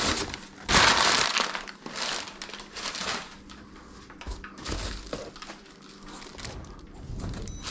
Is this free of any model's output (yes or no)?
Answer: yes